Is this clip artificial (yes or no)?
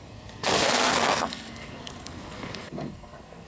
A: yes